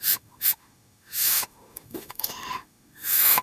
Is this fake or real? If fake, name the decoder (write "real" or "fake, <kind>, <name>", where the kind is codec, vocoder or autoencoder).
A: fake, autoencoder, DAC-VAE